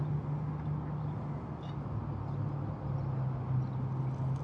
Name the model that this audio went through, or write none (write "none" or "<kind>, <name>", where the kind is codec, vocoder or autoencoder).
none